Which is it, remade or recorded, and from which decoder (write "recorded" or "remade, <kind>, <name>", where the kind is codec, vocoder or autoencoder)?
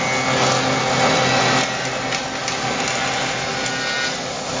recorded